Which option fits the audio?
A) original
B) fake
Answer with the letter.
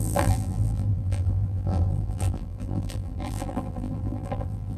B